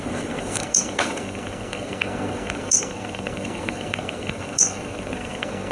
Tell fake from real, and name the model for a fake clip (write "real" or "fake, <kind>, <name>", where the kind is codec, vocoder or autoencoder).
fake, codec, SNAC